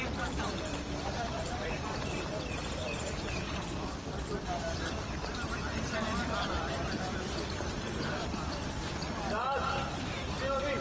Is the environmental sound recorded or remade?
remade